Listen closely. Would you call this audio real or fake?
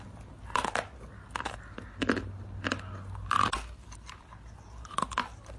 fake